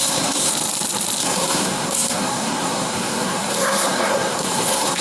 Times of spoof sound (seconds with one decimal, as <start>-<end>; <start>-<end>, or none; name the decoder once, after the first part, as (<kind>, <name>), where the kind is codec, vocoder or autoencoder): 0.0-0.5 (codec, SNAC); 1.2-5.0